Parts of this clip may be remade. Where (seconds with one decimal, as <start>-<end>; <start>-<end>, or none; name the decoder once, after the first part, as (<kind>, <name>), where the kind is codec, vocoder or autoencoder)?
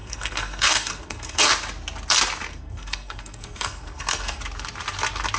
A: 0.0-1.4 (codec, SNAC); 2.5-4.4